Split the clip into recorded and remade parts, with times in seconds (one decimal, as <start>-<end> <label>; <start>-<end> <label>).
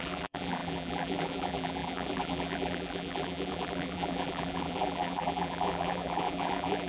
0.0-6.9 remade